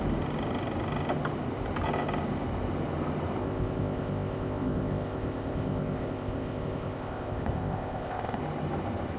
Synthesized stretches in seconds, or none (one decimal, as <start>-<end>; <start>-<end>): 3.4-8.4